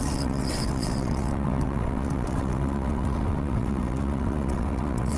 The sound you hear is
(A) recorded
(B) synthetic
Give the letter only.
B